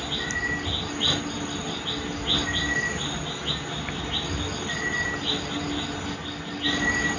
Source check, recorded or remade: recorded